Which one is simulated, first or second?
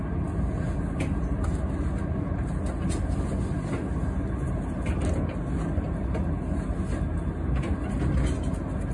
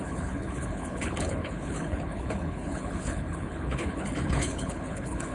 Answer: second